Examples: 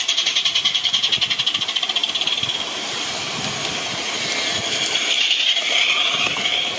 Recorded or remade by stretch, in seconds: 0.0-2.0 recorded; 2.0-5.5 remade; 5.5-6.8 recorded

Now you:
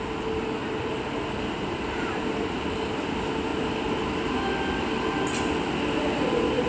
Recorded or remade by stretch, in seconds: 0.0-0.6 recorded; 0.6-2.9 remade; 2.9-3.5 recorded; 3.5-4.0 remade; 4.0-6.7 recorded

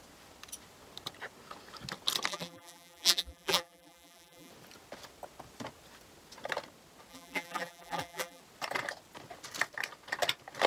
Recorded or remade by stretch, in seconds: 0.0-2.3 recorded; 2.3-4.5 remade; 4.5-7.1 recorded; 7.1-8.4 remade; 8.4-10.7 recorded